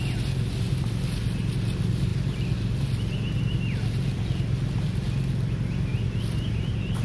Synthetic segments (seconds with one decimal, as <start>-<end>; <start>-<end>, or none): none